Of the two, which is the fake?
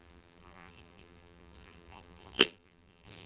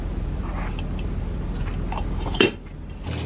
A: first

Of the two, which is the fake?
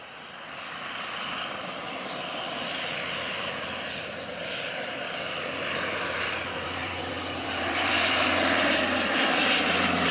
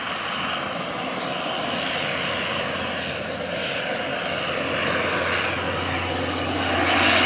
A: first